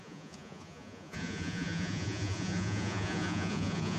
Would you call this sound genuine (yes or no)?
no